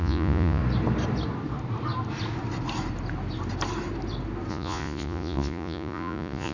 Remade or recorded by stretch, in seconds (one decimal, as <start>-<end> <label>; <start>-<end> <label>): 0.0-0.6 remade; 0.6-4.5 recorded; 4.5-6.5 remade

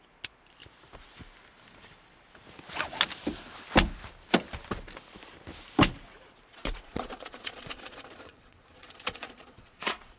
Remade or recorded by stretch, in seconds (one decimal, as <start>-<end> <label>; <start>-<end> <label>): 0.0-6.5 recorded; 6.5-10.2 remade

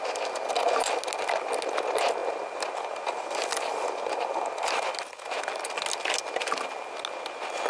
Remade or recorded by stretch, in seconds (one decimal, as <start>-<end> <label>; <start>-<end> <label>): 0.0-7.7 recorded

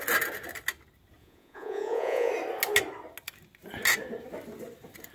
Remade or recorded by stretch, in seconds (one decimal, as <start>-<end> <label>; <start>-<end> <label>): 0.0-1.2 recorded; 1.2-2.3 remade; 2.3-5.1 recorded